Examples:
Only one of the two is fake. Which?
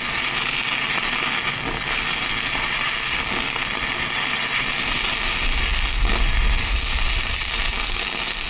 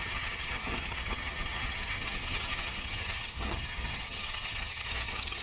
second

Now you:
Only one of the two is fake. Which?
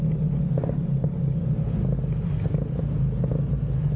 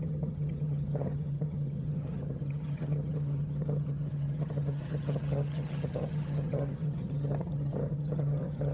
second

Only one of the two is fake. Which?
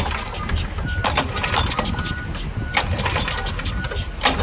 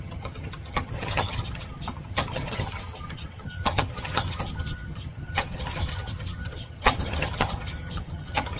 second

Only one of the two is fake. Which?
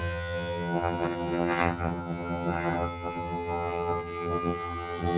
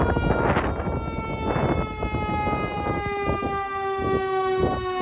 first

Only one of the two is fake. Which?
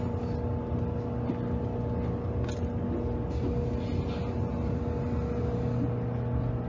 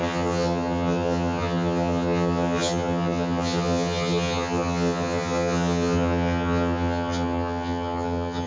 second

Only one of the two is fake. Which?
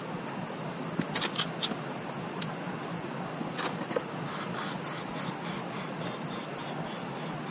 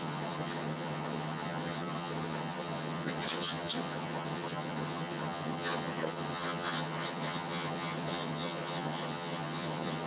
second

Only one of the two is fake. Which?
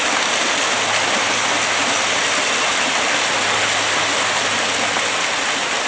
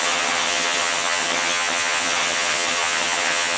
second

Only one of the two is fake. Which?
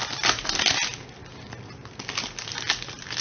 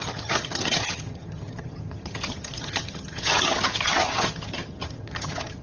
second